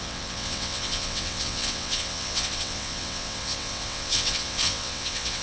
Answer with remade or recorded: remade